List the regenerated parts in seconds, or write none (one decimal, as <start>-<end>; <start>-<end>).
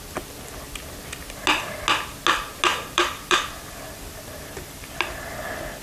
2.7-5.8